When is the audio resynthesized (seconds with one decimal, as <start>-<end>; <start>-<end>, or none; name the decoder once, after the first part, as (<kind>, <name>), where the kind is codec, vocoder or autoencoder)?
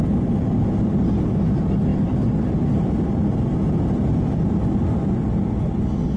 none